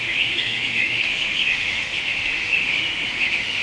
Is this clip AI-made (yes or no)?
yes